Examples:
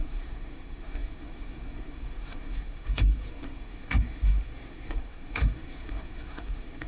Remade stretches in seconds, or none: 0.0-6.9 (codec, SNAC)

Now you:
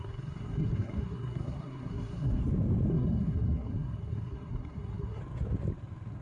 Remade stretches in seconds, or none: 0.0-2.4 (codec, SNAC); 2.9-5.2

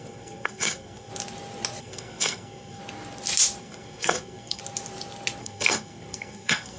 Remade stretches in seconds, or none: 0.0-1.1 (codec, SNAC); 1.8-2.8; 3.6-4.6; 5.4-6.8

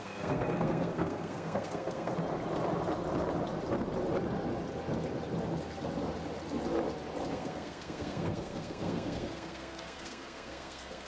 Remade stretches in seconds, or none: 0.0-2.1 (codec, SNAC); 7.3-11.1